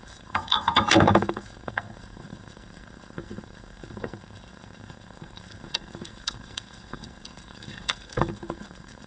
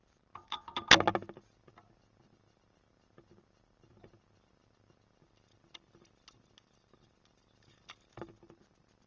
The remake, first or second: first